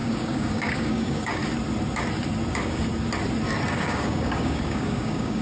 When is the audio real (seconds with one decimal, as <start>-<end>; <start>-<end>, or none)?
1.4-2.5; 2.9-3.7